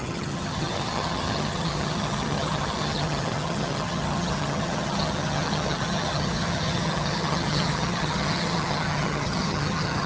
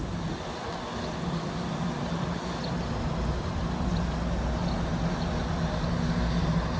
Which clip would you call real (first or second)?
second